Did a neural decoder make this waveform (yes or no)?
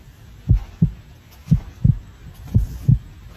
yes